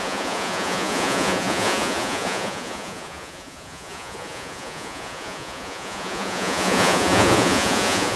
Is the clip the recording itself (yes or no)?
no